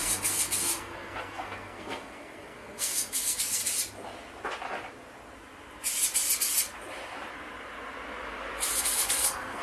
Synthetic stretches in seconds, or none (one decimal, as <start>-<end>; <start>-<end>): 0.0-3.6; 8.8-9.6